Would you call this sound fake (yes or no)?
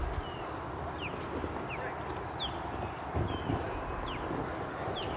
no